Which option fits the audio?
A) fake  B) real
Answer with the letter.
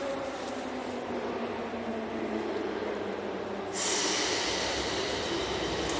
B